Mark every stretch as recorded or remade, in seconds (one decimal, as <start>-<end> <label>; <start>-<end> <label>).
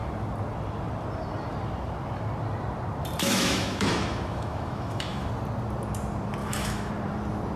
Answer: 0.0-3.2 recorded; 3.2-5.3 remade; 5.3-6.4 recorded; 6.4-6.9 remade; 6.9-7.6 recorded